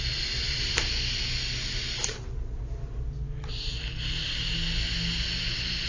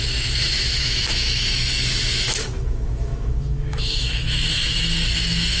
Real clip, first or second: first